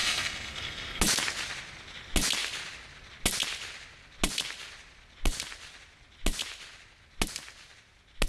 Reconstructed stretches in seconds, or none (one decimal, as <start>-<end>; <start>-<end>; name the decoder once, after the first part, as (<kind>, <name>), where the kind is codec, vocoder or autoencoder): 0.0-1.0 (codec, SNAC)